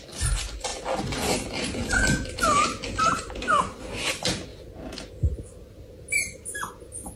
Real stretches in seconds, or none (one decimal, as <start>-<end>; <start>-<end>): 0.7-3.0; 4.5-5.3